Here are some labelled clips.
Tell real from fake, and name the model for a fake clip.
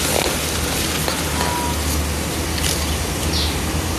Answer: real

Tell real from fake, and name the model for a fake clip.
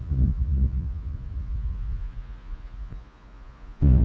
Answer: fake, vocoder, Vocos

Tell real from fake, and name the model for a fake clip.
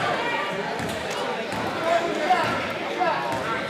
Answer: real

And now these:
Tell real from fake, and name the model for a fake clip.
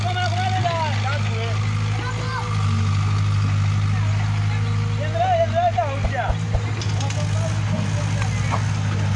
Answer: real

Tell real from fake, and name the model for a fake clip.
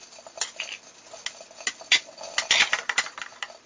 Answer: real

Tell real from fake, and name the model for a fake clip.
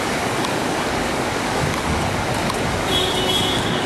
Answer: fake, codec, DAC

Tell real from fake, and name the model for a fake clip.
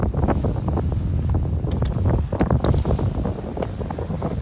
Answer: real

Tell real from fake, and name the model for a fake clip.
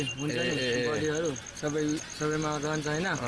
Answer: real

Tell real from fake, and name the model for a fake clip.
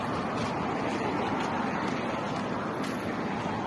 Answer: real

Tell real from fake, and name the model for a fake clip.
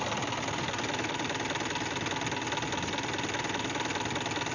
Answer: real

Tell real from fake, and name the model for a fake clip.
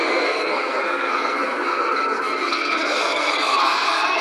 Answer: fake, codec, SNAC